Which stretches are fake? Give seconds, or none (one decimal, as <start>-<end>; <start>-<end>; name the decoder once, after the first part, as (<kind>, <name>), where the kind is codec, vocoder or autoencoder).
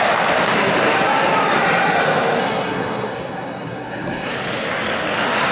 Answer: 2.4-4.3 (codec, SNAC)